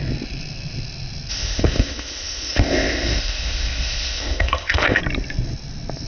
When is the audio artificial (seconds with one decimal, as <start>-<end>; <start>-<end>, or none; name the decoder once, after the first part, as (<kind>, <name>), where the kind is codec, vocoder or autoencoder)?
1.3-5.0 (codec, ZipCodec)

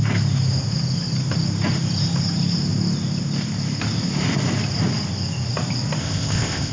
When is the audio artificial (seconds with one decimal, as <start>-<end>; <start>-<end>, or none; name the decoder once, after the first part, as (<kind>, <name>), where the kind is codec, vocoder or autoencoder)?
6.0-6.7 (codec, ZipCodec)

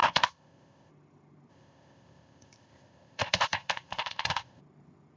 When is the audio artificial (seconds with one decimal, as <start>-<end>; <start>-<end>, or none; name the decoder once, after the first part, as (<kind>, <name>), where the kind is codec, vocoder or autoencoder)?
0.0-0.9 (codec, ZipCodec); 1.5-4.6

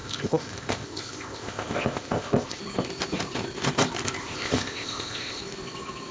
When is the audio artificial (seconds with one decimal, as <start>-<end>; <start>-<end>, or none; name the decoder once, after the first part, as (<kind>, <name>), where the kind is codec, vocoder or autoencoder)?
0.0-2.6 (codec, ZipCodec); 4.2-5.4

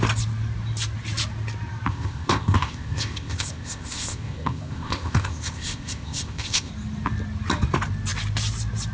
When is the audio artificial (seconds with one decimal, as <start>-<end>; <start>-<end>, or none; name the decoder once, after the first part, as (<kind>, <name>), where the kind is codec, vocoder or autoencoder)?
1.9-6.7 (codec, ZipCodec)

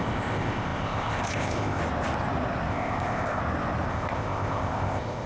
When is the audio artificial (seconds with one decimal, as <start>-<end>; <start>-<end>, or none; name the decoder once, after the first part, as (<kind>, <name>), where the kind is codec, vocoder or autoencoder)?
0.0-1.8 (codec, ZipCodec); 2.7-3.4; 3.9-5.3

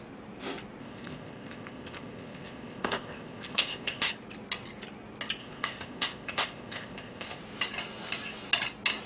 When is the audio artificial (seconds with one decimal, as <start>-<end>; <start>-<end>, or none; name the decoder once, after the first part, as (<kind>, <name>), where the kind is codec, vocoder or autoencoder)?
0.8-4.1 (codec, ZipCodec); 5.4-7.4